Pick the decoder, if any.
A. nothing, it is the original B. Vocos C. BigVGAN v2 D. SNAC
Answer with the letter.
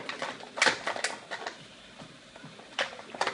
A